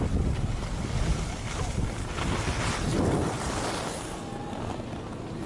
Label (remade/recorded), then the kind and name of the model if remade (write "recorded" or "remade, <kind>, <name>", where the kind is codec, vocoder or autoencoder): recorded